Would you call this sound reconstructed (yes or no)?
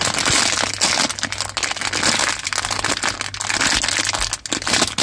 no